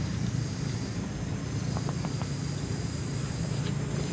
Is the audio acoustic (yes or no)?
yes